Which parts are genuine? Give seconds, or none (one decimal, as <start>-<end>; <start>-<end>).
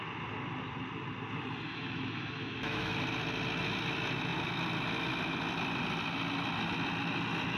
0.0-1.7; 2.9-7.6